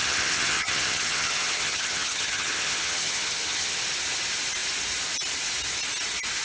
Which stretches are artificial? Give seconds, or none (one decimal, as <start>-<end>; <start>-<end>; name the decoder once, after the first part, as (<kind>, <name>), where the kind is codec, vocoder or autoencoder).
0.0-3.8 (vocoder, HiFi-GAN)